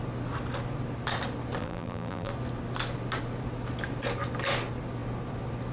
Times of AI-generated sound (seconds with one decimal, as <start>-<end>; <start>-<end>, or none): 1.6-2.3